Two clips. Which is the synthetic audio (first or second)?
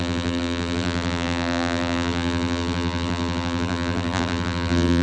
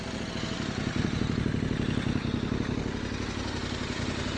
first